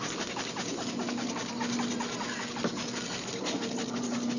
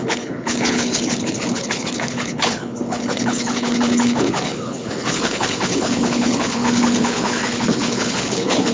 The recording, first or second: first